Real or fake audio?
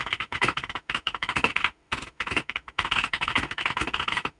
fake